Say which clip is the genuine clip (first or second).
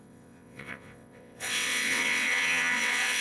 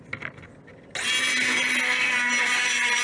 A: second